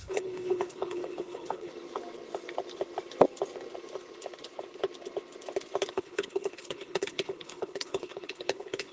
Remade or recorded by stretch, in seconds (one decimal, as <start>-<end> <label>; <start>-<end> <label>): 0.0-1.7 remade; 1.7-5.9 recorded; 5.9-8.9 remade